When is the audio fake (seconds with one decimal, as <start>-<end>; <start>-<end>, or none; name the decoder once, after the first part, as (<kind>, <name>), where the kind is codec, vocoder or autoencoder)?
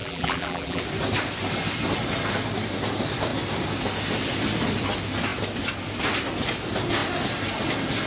0.0-0.8 (vocoder, BigVGAN v2)